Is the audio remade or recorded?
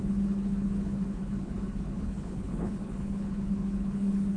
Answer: remade